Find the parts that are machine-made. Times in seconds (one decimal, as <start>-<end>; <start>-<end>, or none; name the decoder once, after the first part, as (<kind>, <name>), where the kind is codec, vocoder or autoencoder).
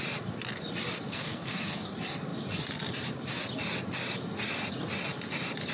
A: 1.1-1.9 (codec, SNAC)